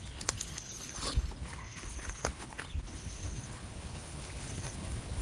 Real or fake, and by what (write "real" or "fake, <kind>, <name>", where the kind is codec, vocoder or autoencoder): fake, codec, HILCodec